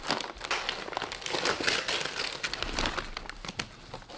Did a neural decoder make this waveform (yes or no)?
no